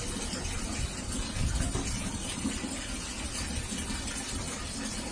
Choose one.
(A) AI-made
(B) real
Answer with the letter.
B